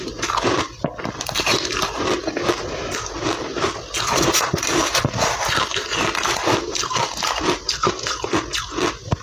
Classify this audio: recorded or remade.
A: recorded